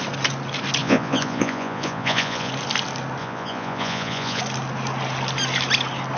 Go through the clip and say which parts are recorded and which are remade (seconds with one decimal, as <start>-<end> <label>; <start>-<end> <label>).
0.0-0.8 recorded; 0.8-2.5 remade; 2.5-3.2 recorded; 3.2-4.4 remade; 4.4-6.2 recorded